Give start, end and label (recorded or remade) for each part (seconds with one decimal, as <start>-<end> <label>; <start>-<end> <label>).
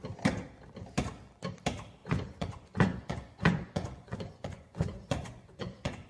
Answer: 0.0-2.0 recorded; 2.0-6.1 remade